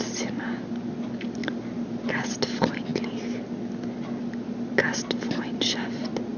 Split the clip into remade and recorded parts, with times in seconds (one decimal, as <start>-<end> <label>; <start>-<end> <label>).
0.0-1.4 recorded; 1.4-2.1 remade; 2.1-6.4 recorded